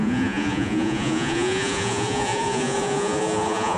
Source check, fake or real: fake